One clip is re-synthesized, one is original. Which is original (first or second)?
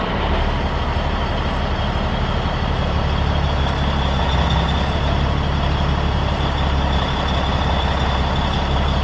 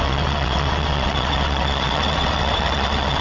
first